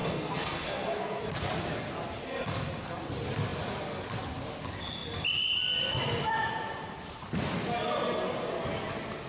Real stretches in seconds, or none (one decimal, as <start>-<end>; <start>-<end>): 1.2-9.3